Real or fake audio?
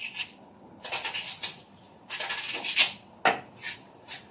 real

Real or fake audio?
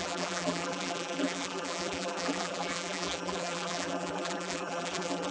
fake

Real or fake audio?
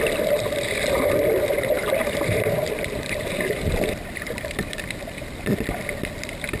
fake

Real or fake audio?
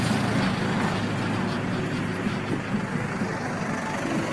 real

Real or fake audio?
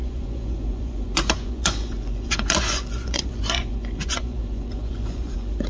fake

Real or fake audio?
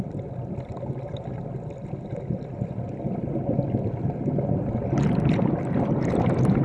real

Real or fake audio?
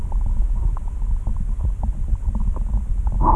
real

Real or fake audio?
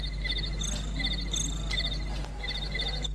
real